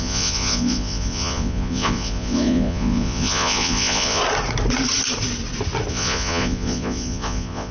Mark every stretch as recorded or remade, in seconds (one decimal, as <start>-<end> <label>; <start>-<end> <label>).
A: 0.0-4.2 remade; 4.2-5.9 recorded; 5.9-7.7 remade